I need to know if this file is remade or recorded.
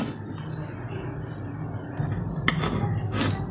recorded